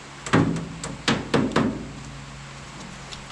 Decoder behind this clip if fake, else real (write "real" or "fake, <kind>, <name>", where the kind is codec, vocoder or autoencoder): real